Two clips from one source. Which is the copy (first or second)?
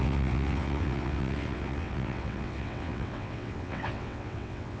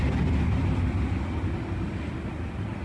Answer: first